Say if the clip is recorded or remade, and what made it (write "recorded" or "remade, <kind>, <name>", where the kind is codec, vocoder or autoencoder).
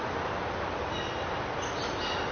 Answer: recorded